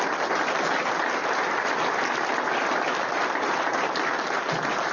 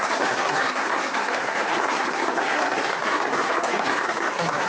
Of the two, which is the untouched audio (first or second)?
first